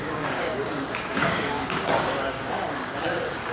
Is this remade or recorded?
remade